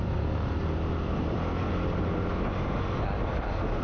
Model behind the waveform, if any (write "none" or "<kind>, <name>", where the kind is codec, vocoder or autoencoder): none